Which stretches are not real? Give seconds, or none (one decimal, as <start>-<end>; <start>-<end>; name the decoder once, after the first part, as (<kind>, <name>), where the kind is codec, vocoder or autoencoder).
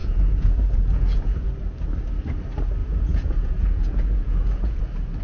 0.0-1.5 (vocoder, Vocos); 2.8-4.8